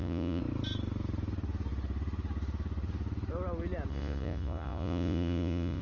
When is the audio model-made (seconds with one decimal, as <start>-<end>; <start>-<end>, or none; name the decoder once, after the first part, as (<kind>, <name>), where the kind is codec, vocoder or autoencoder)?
0.0-0.4 (vocoder, Vocos); 3.9-5.8